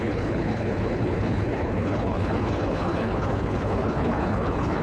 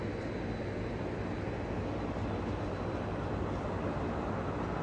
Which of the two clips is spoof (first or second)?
first